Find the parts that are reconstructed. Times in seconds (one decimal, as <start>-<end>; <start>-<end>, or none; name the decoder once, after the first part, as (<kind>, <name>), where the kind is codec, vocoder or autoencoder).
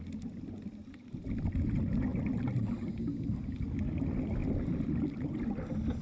none